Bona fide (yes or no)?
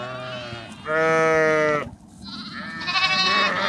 yes